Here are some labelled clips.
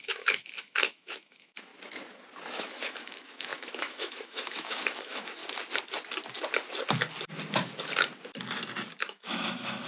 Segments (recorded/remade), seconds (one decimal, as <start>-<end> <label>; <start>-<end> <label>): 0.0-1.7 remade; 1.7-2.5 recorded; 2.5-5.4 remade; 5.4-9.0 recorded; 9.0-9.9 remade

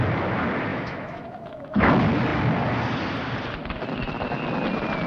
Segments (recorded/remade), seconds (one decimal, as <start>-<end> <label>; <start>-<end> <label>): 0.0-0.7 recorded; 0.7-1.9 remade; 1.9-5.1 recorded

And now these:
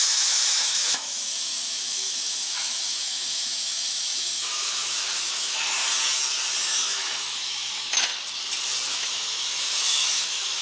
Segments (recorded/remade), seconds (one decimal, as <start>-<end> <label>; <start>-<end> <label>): 0.0-5.8 remade; 5.8-6.8 recorded; 6.8-8.1 remade; 8.1-8.9 recorded; 8.9-10.6 remade